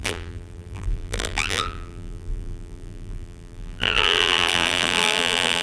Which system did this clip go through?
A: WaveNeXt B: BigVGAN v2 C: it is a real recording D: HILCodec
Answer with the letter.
B